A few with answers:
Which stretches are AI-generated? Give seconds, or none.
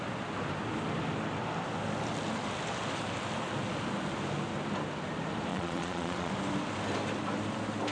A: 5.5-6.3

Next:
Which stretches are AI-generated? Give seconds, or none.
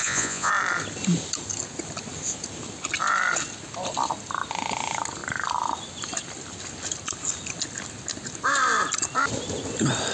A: 0.0-0.5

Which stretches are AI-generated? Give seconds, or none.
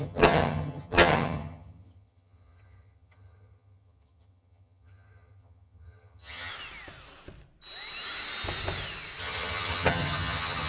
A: 0.0-6.5; 9.2-10.7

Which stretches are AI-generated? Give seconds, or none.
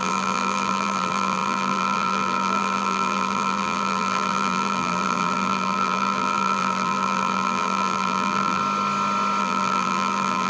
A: 0.0-8.6; 9.4-10.5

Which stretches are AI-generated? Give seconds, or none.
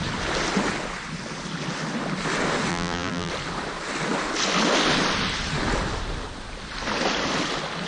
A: 2.7-3.3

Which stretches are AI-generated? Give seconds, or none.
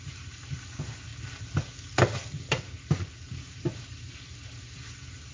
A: 0.0-1.1; 2.6-5.3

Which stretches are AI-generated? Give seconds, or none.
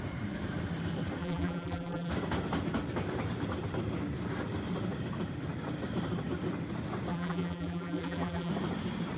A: 1.2-2.1; 7.1-8.5